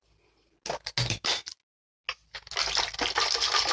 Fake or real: real